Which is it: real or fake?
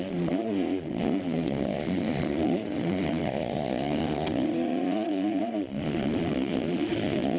fake